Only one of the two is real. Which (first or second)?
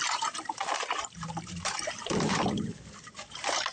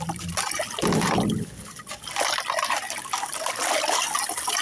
second